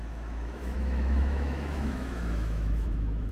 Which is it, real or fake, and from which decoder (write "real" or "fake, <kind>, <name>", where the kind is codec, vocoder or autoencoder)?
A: fake, autoencoder, DAC-VAE